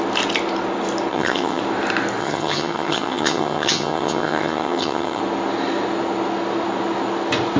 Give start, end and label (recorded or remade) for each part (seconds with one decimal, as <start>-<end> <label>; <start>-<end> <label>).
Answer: 0.0-1.1 recorded; 1.1-1.6 remade; 1.6-2.2 recorded; 2.2-5.2 remade; 5.2-7.6 recorded